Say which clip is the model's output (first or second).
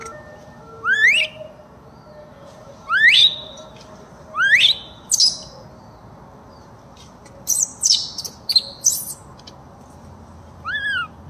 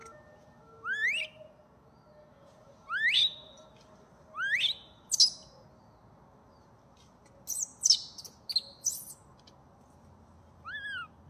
first